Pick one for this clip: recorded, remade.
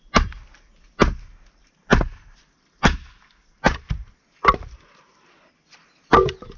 recorded